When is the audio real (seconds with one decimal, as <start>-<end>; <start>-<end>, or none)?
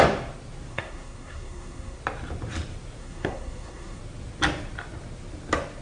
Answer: 0.0-0.7; 2.0-3.0; 4.0-5.8